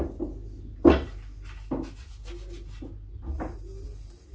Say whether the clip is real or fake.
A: real